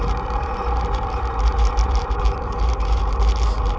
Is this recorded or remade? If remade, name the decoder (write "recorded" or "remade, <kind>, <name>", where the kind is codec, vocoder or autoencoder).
remade, vocoder, BigVGAN v2